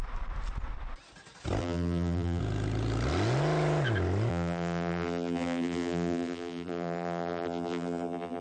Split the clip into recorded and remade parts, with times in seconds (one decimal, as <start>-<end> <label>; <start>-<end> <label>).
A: 0.0-1.6 recorded; 1.6-2.4 remade; 2.4-4.3 recorded; 4.3-8.4 remade